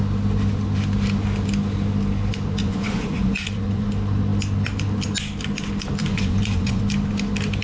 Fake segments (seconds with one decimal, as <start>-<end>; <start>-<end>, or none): 2.6-3.9; 6.0-6.8